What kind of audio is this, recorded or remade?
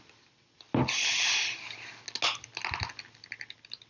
recorded